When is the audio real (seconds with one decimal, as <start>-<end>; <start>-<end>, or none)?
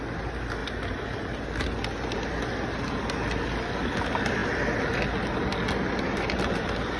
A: 0.0-7.0